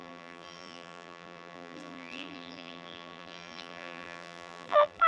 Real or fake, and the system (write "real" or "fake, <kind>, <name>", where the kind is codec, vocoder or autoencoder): fake, vocoder, BigVGAN v2